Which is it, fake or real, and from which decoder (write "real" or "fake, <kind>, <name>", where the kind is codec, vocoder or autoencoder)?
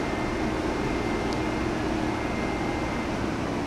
real